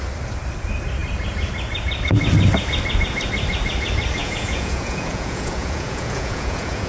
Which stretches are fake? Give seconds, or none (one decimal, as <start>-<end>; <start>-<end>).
4.2-6.9